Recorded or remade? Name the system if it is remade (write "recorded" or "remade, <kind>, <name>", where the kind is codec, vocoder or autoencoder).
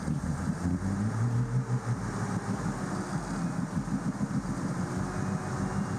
recorded